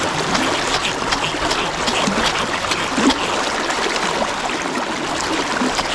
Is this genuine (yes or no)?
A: yes